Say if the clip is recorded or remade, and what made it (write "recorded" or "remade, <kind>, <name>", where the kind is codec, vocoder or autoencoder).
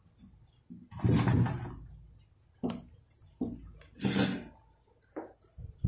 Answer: recorded